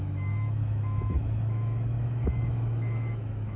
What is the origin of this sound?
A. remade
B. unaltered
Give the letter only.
A